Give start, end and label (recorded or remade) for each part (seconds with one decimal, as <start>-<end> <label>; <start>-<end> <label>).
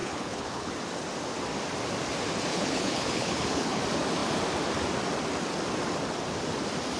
0.0-0.7 remade; 0.7-2.5 recorded; 2.5-3.8 remade; 3.8-7.0 recorded